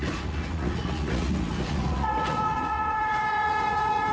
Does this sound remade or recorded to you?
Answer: remade